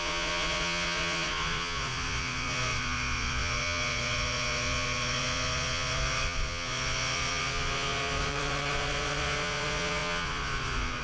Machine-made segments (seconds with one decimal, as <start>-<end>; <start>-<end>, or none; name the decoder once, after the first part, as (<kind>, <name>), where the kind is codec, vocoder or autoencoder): 0.0-11.0 (vocoder, Vocos)